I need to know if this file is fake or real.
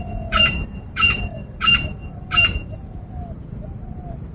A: fake